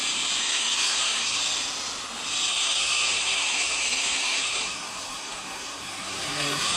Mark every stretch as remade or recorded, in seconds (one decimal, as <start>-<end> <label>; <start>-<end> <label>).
0.0-0.4 recorded; 0.4-1.4 remade; 1.4-2.5 recorded; 2.5-6.8 remade